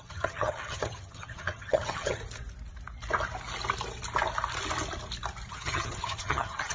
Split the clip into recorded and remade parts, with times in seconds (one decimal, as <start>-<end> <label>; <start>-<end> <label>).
0.0-2.2 remade; 2.2-5.5 recorded; 5.5-6.7 remade